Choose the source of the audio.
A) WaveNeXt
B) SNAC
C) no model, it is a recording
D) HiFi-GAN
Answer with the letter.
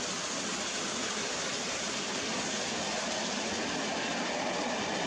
C